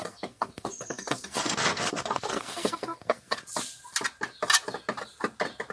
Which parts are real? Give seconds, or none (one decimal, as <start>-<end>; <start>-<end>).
3.4-5.7